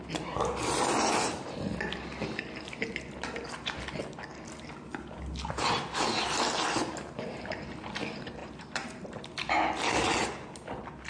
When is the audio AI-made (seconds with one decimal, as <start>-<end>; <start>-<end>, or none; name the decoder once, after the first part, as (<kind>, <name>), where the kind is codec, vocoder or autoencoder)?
8.4-9.2 (vocoder, BigVGAN v2)